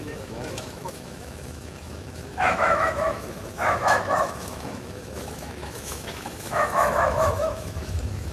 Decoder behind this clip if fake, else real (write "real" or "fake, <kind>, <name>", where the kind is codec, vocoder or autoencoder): fake, autoencoder, DAC-VAE